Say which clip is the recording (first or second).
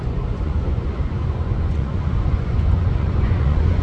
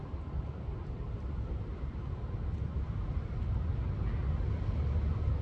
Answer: second